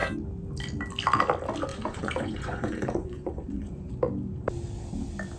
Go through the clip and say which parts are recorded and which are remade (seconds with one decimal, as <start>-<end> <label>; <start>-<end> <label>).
0.0-1.7 recorded; 1.7-3.9 remade; 3.9-5.4 recorded